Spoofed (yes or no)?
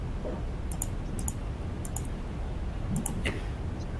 no